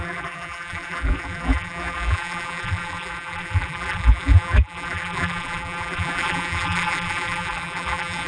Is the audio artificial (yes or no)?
yes